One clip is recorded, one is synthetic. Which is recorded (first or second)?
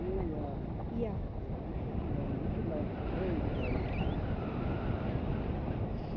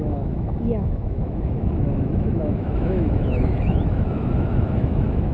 first